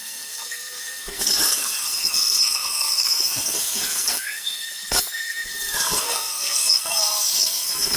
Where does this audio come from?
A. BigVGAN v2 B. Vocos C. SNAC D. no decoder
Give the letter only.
C